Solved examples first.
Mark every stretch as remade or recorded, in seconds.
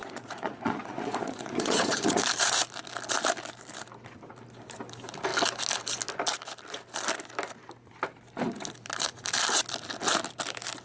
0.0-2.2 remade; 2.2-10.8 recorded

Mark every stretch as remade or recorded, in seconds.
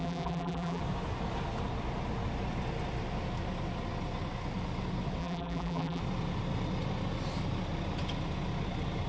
0.0-0.8 remade; 0.8-5.2 recorded; 5.2-6.0 remade; 6.0-9.1 recorded